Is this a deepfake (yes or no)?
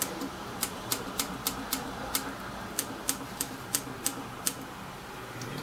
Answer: yes